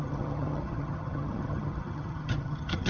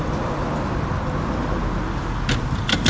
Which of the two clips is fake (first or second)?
first